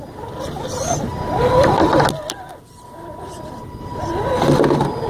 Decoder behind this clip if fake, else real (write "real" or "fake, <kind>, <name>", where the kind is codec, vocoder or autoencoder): real